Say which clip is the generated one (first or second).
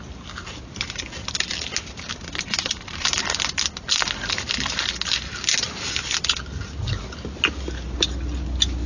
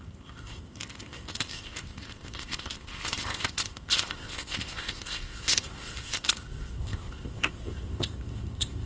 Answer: second